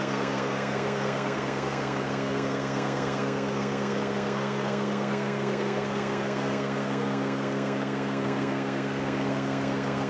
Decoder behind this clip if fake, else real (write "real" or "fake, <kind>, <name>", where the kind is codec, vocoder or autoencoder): fake, codec, SNAC